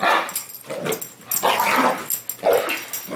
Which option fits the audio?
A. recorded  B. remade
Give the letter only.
A